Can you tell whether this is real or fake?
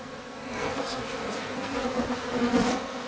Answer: fake